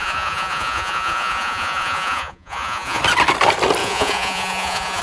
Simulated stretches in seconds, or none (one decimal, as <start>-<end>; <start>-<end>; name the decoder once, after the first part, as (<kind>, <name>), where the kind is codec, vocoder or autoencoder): 0.0-3.0 (vocoder, Vocos); 3.8-5.0